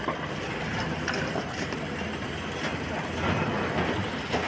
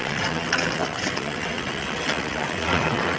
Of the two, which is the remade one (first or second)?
second